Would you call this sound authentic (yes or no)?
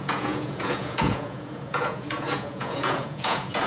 no